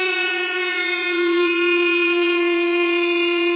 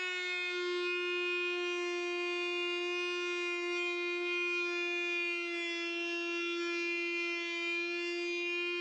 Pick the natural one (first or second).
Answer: second